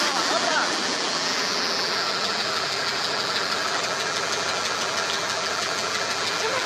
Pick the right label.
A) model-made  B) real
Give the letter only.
A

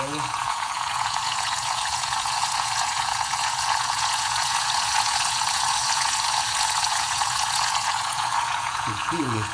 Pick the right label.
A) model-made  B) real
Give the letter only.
A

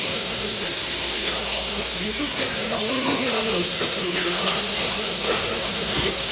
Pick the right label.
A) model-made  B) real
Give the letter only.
A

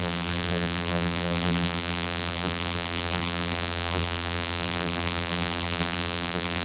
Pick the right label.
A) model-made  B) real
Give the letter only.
A